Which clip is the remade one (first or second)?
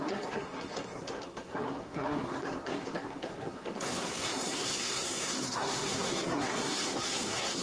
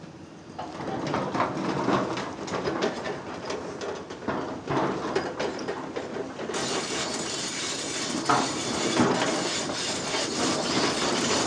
first